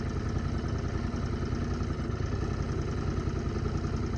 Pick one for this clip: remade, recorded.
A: recorded